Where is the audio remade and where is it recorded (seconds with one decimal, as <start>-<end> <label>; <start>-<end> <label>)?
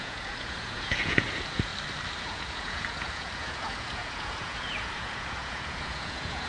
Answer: 0.0-1.7 remade; 1.7-2.2 recorded; 2.2-6.5 remade